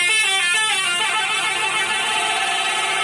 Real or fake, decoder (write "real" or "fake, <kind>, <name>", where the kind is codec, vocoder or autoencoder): fake, vocoder, BigVGAN v2